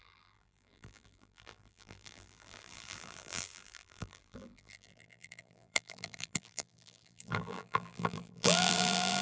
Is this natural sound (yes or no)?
no